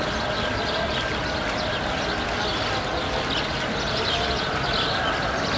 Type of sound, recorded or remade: recorded